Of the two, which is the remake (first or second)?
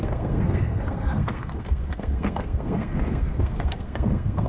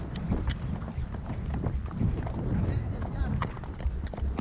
first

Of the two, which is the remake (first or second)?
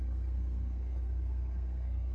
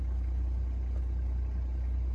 first